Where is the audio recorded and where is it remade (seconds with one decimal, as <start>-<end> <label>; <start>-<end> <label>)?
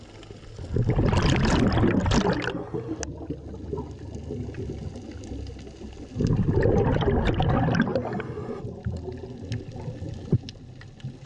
0.0-11.3 recorded